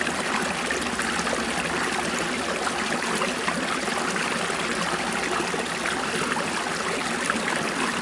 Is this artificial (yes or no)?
no